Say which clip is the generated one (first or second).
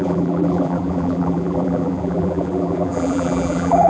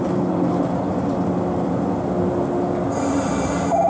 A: first